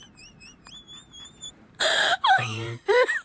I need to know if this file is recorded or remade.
remade